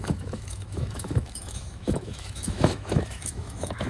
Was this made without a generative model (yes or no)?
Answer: no